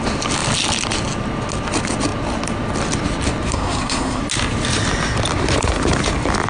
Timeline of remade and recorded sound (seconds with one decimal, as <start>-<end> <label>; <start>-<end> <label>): 0.0-3.5 recorded; 3.5-4.2 remade; 4.2-6.5 recorded